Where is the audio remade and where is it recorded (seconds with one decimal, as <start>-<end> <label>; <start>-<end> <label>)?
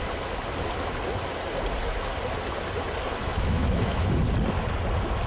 0.0-3.3 recorded; 3.3-4.1 remade; 4.1-5.3 recorded